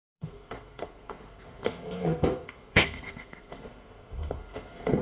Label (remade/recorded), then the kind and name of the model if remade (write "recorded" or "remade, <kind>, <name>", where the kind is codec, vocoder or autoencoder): remade, codec, SNAC